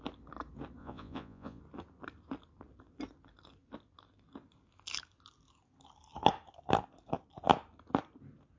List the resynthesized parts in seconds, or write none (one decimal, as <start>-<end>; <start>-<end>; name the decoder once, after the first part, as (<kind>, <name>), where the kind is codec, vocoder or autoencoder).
0.8-1.6 (vocoder, Vocos)